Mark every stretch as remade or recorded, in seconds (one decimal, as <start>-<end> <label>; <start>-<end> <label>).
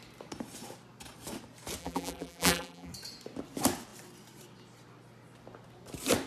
0.0-1.8 recorded; 1.8-2.9 remade; 2.9-6.3 recorded